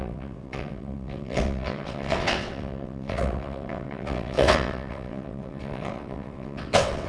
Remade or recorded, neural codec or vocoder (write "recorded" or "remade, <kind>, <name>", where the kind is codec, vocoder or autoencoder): remade, vocoder, WaveNeXt